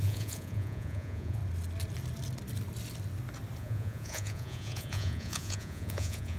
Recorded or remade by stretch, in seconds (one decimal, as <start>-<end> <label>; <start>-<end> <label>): 0.0-1.4 remade; 1.4-3.6 recorded; 3.6-6.4 remade